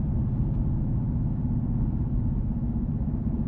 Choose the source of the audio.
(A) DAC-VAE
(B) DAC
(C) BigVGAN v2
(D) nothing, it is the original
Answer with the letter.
D